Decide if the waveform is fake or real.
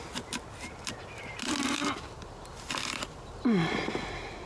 real